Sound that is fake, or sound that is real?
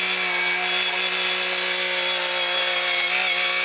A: real